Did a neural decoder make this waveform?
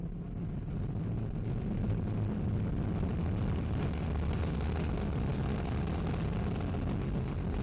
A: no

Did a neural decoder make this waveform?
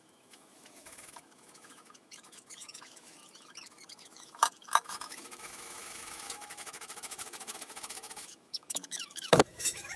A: yes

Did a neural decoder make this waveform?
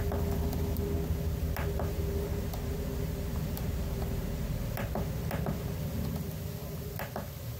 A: no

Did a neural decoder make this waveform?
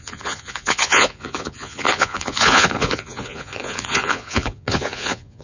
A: yes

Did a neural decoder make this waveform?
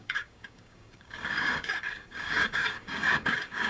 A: yes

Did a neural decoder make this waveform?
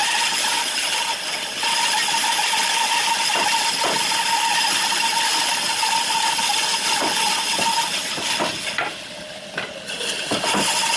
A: no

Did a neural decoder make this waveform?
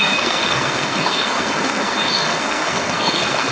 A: yes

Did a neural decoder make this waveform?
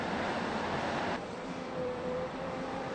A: yes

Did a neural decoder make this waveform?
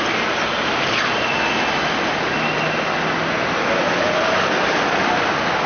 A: no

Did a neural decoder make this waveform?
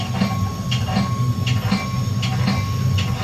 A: no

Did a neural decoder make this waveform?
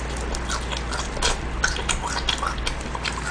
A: no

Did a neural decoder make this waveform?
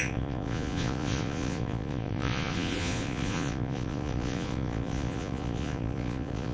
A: yes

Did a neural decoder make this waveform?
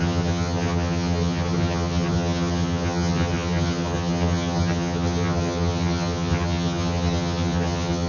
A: yes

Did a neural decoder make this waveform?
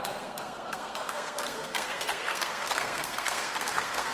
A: yes